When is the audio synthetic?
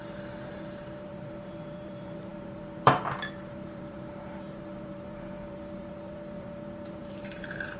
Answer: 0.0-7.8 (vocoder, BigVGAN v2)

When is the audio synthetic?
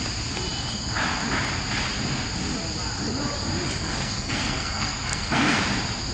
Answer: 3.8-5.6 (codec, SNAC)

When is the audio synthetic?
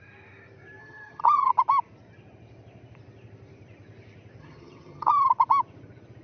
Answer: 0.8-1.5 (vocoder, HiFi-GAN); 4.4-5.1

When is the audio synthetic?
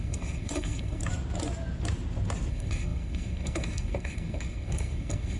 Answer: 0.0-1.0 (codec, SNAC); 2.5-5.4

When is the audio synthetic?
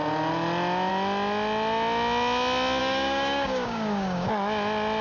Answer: 2.8-4.3 (codec, DAC)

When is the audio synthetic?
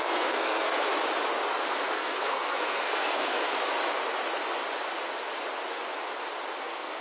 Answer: 0.0-0.9 (codec, SNAC); 1.7-3.5; 6.6-7.0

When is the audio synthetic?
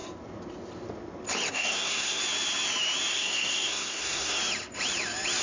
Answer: 1.5-2.2 (codec, SNAC); 3.1-4.4